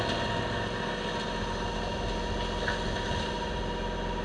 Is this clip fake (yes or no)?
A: no